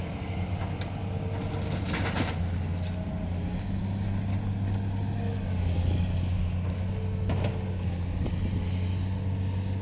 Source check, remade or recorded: recorded